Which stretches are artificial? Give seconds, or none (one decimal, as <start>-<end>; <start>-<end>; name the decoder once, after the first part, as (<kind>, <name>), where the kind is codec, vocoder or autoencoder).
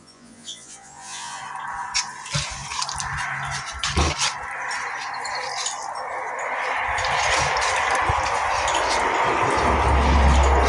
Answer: 0.0-1.4 (vocoder, Vocos)